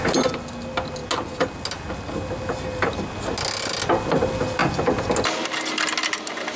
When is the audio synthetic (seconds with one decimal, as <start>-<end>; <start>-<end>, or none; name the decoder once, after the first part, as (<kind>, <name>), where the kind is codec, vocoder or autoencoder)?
none